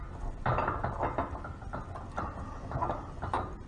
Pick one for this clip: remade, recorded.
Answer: recorded